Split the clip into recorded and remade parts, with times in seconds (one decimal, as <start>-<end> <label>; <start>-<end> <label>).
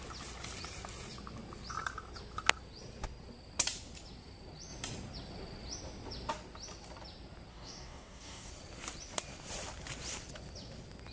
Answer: 0.0-7.5 recorded; 7.5-8.5 remade; 8.5-11.1 recorded